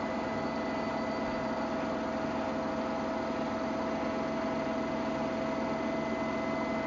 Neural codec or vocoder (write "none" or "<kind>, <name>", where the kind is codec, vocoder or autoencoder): none